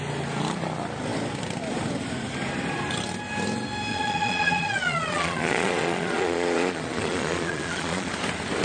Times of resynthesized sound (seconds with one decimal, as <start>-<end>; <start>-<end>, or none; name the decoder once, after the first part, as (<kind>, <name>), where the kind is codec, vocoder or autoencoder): 3.9-8.1 (vocoder, Vocos)